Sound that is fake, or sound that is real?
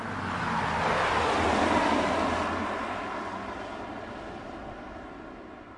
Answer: real